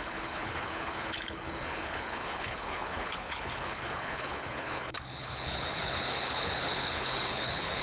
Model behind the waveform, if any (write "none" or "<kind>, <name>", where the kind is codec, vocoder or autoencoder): codec, HILCodec